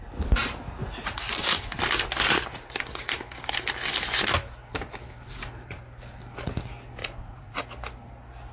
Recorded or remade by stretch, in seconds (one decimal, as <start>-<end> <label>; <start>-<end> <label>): 0.0-0.8 recorded; 0.8-1.6 remade; 1.6-7.0 recorded; 7.0-7.6 remade; 7.6-8.5 recorded